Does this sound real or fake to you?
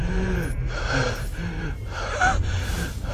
fake